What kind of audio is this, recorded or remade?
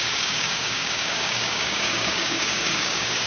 remade